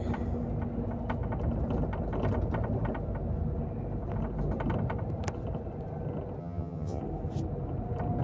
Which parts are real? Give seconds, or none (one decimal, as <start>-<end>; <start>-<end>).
0.0-6.4; 7.0-8.2